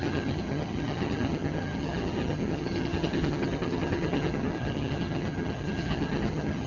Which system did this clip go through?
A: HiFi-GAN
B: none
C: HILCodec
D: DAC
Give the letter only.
A